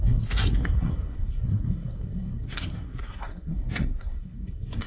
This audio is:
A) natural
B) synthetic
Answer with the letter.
B